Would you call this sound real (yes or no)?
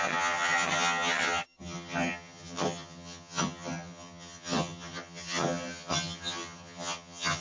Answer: no